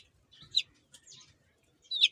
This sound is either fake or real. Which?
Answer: real